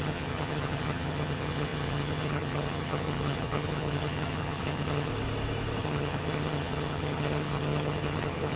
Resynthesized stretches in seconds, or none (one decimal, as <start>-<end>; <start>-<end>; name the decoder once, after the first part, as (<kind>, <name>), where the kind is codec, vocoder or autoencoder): 0.0-5.1 (vocoder, HiFi-GAN); 5.8-8.6